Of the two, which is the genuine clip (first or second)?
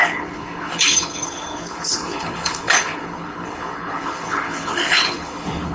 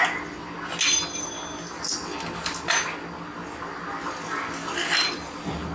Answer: second